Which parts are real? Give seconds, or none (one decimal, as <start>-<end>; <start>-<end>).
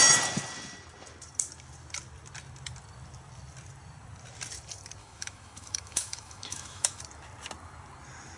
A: 0.0-5.0; 7.0-8.4